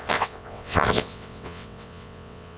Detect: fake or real fake